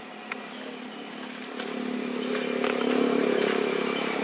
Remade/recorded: recorded